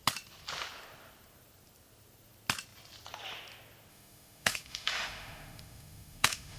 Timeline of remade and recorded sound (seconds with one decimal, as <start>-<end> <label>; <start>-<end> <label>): 0.0-3.9 recorded; 3.9-6.6 remade